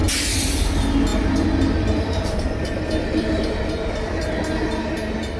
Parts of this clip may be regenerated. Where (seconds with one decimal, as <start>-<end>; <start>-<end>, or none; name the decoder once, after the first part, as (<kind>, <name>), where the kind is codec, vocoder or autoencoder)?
0.0-0.7 (vocoder, BigVGAN v2); 1.1-4.3